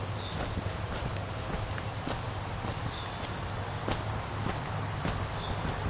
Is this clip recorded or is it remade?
recorded